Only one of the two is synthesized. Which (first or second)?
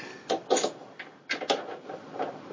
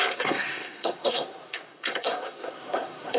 second